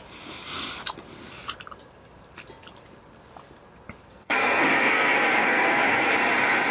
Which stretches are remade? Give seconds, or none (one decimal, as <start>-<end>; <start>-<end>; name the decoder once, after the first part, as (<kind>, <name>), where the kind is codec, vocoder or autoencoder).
4.1-6.1 (codec, SNAC)